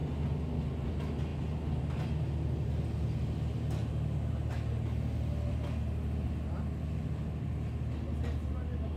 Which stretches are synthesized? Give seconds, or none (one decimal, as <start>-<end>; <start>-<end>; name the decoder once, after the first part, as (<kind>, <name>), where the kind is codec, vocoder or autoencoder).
none